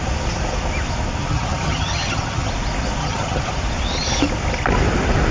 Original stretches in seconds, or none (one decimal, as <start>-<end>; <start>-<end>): 0.0-1.3; 2.5-3.0; 3.5-5.3